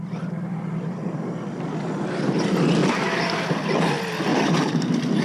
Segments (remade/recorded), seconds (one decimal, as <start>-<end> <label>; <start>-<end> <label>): 0.0-2.8 recorded; 2.8-3.5 remade; 3.5-4.3 recorded; 4.3-5.2 remade

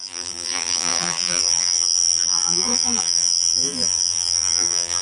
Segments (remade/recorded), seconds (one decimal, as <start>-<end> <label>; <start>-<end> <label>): 0.0-5.0 remade

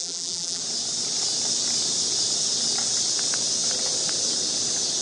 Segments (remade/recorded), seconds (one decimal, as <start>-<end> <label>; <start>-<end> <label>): 0.0-0.6 remade; 0.6-5.0 recorded

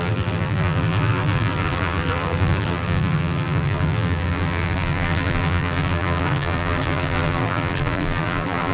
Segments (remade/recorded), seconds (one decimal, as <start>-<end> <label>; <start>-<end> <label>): 0.0-8.7 remade

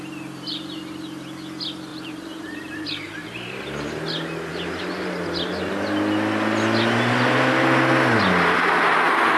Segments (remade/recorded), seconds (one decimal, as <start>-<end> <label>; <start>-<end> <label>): 0.0-1.9 recorded; 1.9-3.5 remade; 3.5-4.5 recorded; 4.5-5.7 remade; 5.7-9.4 recorded

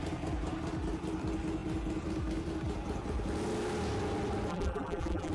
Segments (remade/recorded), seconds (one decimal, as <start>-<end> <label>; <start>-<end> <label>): 0.0-4.5 recorded; 4.5-5.3 remade

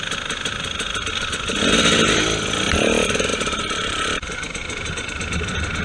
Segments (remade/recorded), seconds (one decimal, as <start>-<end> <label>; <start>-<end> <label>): 0.0-3.3 recorded; 3.3-4.2 remade; 4.2-5.8 recorded